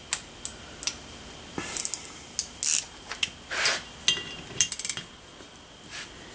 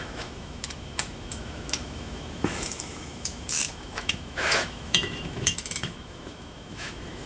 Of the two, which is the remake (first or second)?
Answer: second